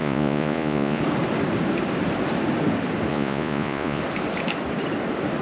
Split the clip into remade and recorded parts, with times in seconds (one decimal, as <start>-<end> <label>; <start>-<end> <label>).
0.0-1.0 remade; 1.0-3.1 recorded; 3.1-4.0 remade; 4.0-5.4 recorded